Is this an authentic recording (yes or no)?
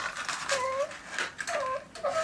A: yes